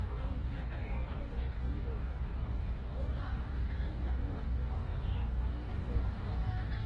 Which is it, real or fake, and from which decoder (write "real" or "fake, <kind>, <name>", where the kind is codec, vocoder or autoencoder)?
fake, codec, DAC